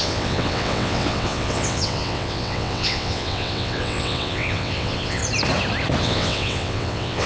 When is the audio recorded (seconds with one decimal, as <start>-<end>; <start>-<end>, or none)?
5.2-6.0